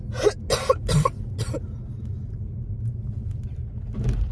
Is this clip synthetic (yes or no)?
no